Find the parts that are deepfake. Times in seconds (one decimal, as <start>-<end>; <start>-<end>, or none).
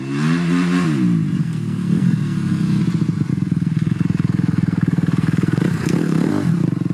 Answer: 1.4-2.8; 3.3-6.3